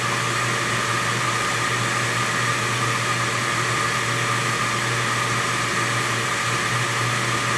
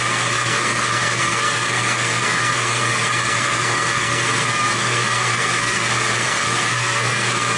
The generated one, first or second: second